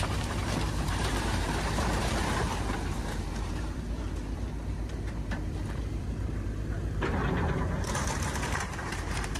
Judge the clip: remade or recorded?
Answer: remade